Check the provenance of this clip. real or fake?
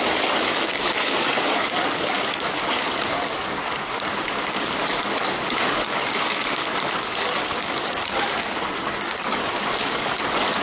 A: fake